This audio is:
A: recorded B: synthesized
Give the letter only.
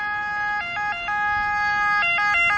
A